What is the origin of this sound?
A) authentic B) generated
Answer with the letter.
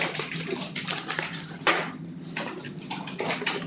A